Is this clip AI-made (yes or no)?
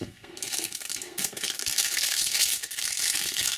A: yes